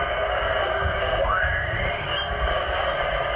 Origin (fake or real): fake